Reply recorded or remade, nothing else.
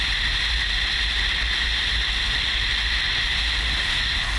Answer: recorded